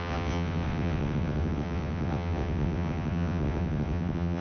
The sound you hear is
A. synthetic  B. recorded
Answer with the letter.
A